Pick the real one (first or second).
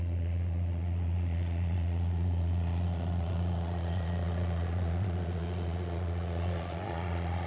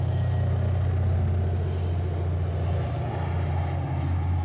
second